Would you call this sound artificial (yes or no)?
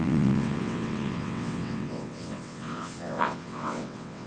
yes